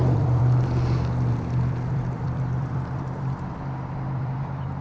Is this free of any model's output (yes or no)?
no